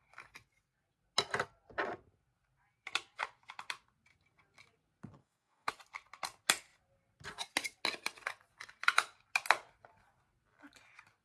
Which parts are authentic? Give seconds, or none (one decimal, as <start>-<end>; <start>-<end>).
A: 0.0-5.2; 5.7-11.2